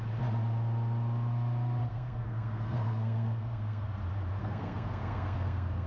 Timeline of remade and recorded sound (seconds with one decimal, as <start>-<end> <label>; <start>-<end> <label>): 0.0-1.8 recorded; 1.8-4.0 remade; 4.0-4.4 recorded; 4.4-5.9 remade

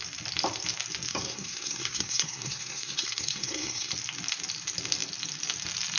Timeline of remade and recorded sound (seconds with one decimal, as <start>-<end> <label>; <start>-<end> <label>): 0.0-1.1 recorded; 1.1-3.9 remade; 3.9-6.0 recorded

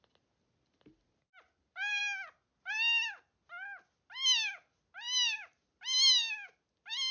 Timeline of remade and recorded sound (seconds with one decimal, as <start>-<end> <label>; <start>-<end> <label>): 0.0-7.1 recorded

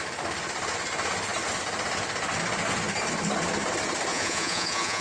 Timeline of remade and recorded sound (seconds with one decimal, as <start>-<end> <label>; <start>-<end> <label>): 0.0-4.1 recorded; 4.1-5.0 remade